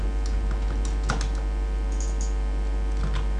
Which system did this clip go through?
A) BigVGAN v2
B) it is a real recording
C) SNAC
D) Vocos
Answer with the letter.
B